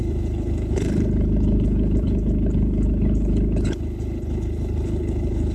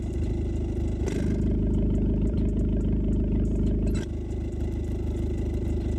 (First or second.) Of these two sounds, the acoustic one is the second